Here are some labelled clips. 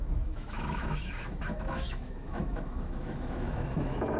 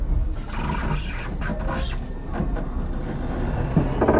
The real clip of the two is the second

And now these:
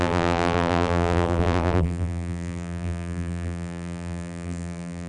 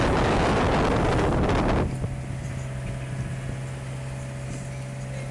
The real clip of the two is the second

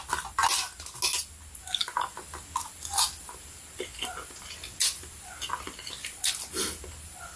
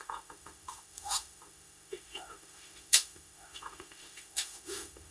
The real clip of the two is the first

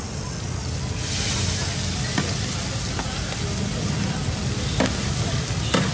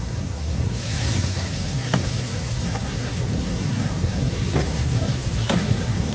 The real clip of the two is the first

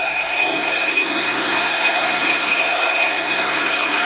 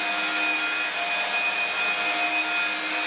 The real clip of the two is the second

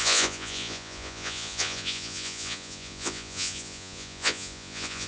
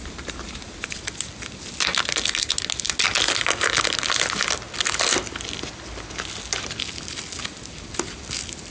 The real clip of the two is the second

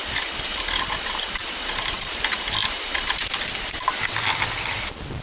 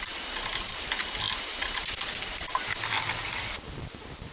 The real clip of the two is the second